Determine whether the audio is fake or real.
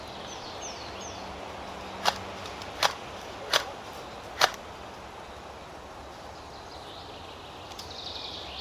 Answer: real